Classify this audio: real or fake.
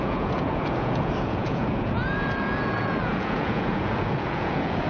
fake